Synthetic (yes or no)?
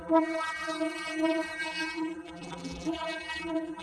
yes